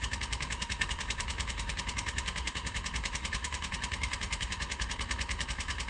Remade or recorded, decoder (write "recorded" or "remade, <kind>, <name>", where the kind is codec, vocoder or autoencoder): remade, autoencoder, DAC-VAE